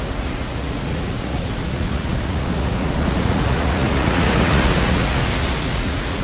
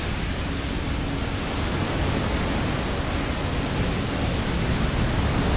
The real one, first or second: second